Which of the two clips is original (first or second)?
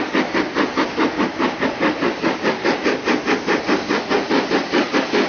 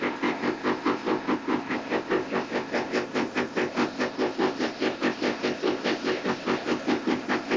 first